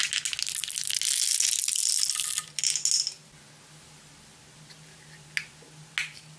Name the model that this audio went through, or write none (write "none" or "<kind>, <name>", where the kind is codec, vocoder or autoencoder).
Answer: none